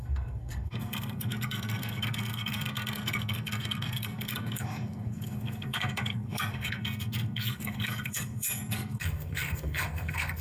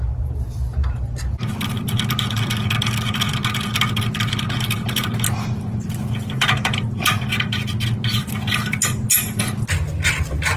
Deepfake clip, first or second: first